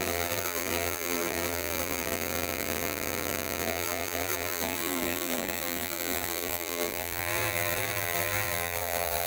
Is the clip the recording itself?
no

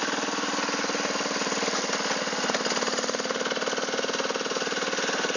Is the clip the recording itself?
yes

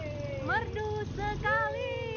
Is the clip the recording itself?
yes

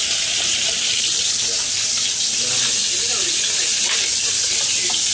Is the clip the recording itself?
yes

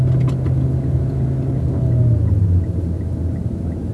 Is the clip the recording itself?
yes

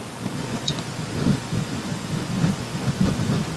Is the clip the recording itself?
no